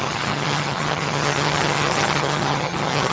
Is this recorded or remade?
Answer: remade